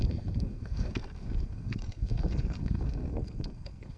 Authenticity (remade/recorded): remade